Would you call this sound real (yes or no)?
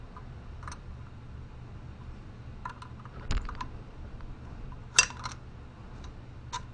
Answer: yes